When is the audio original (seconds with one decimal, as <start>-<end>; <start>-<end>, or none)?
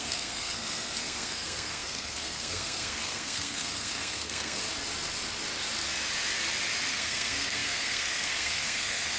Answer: 4.6-6.9